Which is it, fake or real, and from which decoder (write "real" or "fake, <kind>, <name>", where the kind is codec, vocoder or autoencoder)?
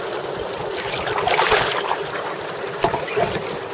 real